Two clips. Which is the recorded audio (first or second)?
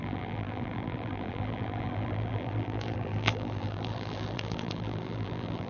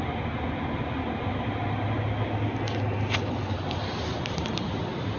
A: second